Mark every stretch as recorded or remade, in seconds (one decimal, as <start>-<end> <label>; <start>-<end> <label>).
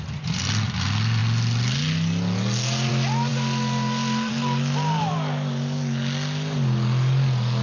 0.0-7.6 recorded